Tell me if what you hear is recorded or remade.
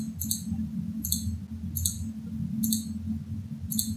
recorded